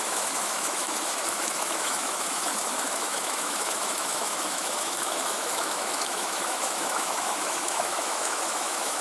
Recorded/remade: remade